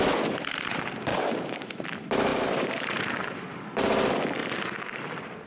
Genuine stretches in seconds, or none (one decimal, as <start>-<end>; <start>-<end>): 0.0-1.1; 1.7-2.3; 3.6-4.4; 5.0-5.5